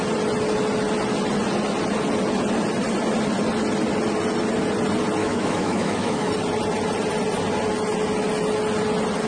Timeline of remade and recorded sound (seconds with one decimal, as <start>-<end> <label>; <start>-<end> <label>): 0.0-5.2 recorded; 5.2-6.3 remade; 6.3-9.3 recorded